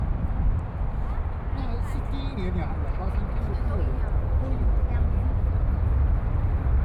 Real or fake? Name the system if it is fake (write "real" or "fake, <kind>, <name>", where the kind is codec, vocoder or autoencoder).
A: real